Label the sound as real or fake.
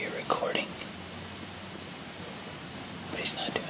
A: real